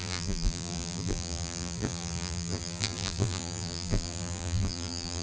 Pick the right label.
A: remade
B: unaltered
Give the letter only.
A